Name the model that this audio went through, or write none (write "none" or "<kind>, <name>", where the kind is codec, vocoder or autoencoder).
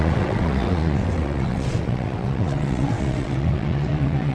vocoder, WaveNeXt